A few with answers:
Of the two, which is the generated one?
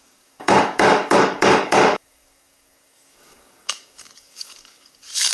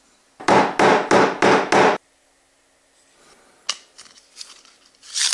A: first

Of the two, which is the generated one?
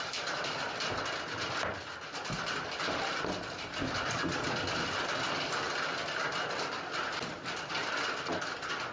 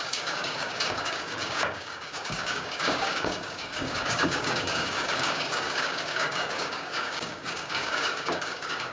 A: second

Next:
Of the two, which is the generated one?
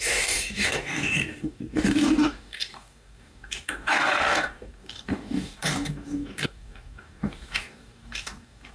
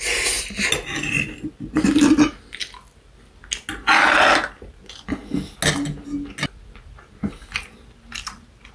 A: first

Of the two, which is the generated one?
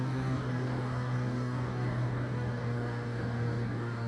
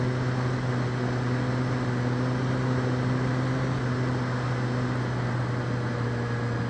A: first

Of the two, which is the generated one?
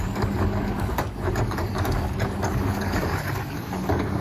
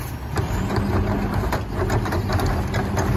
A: first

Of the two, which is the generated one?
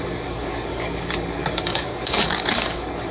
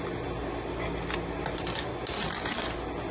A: first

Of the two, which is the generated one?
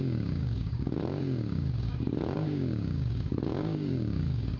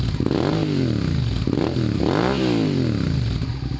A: first